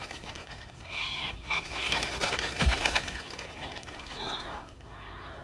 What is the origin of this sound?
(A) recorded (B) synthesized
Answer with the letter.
B